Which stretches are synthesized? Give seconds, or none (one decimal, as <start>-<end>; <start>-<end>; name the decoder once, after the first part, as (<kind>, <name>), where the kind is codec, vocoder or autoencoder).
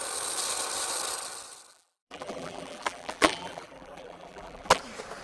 1.7-4.8 (vocoder, BigVGAN v2)